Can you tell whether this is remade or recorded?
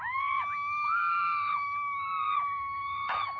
remade